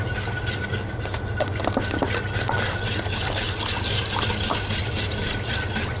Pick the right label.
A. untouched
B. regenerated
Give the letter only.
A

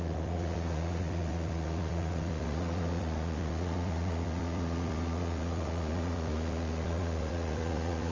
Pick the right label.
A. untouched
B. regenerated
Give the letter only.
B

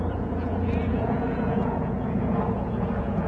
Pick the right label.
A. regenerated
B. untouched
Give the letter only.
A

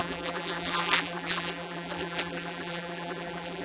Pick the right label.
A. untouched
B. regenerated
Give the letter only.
B